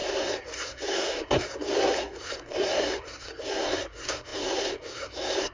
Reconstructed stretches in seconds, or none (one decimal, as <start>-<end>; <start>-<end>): 0.0-5.5

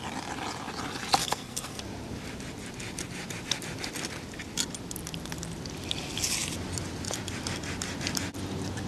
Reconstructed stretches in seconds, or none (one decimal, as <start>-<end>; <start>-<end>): 1.2-1.8

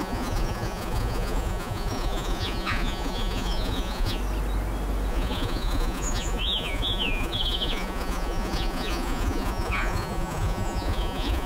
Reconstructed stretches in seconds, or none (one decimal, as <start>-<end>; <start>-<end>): 0.0-4.2; 5.1-11.5

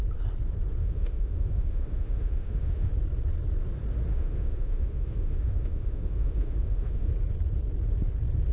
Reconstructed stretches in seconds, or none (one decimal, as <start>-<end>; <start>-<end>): 0.8-2.9; 4.1-7.1

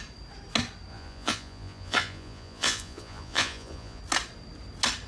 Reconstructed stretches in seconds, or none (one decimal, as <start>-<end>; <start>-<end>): 0.9-4.0

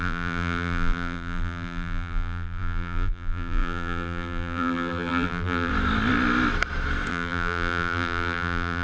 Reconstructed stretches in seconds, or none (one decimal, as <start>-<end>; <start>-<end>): 0.0-5.7; 7.1-8.8